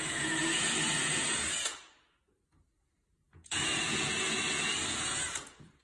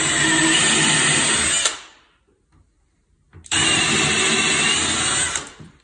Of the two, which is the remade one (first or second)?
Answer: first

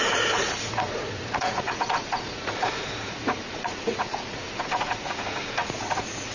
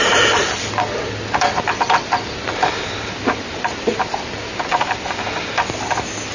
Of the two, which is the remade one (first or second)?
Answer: first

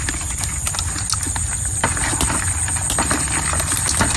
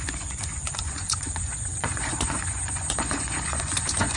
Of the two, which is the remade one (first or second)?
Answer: second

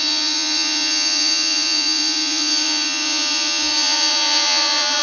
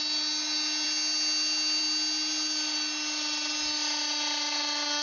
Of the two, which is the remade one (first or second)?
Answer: first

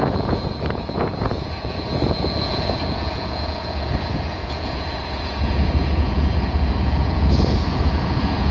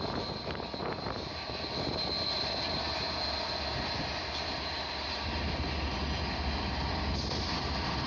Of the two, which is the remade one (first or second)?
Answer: first